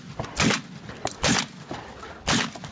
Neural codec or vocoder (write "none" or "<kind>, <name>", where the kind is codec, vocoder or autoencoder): none